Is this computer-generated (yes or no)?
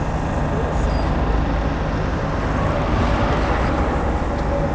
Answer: no